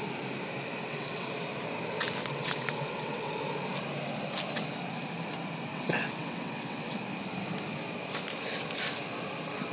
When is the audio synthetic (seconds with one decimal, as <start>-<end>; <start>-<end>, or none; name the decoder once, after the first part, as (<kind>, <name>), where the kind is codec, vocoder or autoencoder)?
0.8-1.3 (vocoder, WaveNeXt); 2.2-3.3; 5.7-7.0